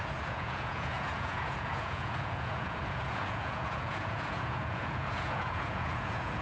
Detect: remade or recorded remade